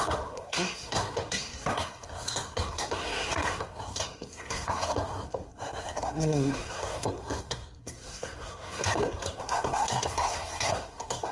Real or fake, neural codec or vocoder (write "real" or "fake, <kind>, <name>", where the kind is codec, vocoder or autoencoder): fake, codec, SNAC